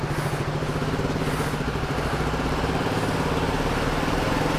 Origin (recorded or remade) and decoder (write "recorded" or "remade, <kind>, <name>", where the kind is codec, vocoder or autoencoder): recorded